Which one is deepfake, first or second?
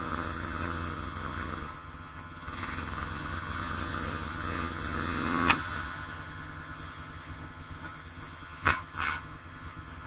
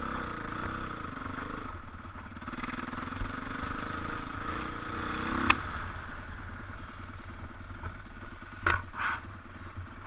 first